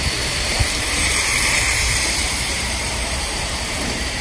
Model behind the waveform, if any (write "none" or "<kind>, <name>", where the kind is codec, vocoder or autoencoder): vocoder, BigVGAN v2